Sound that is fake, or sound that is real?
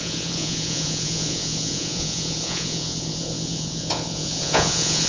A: fake